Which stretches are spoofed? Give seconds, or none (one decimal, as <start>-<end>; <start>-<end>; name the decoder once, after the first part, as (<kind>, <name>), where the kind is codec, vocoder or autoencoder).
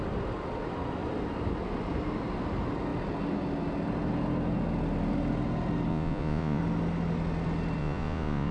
5.9-6.6 (vocoder, Vocos); 7.8-8.5